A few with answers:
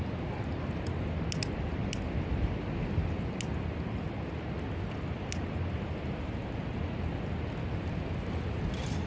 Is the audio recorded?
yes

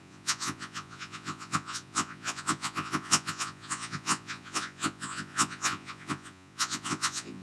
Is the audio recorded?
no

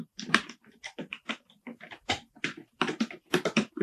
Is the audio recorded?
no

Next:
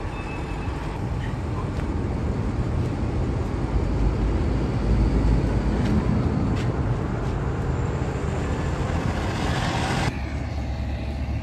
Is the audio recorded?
yes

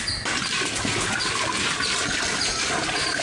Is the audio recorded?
yes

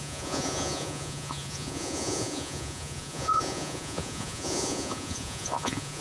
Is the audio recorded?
no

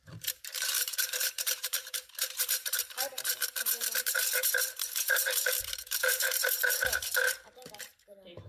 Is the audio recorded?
no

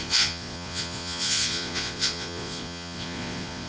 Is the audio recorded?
no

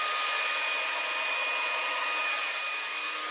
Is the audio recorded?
yes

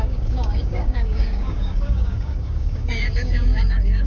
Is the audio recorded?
no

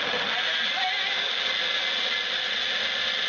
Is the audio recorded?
yes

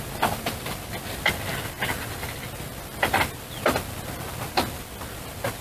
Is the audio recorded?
yes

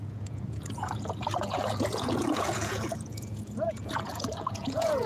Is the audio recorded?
no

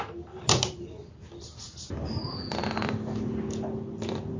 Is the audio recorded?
yes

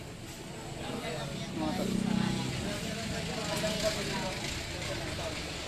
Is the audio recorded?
yes